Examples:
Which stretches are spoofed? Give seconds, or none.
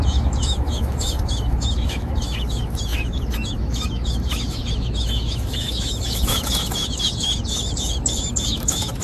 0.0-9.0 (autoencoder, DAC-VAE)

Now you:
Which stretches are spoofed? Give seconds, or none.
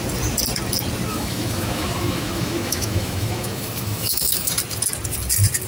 1.1-4.5 (autoencoder, DAC-VAE)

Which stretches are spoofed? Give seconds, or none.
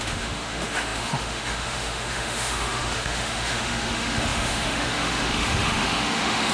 0.0-6.5 (autoencoder, DAC-VAE)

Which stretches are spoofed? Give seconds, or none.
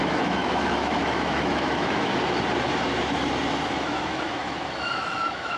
0.0-2.1 (autoencoder, DAC-VAE); 3.7-5.6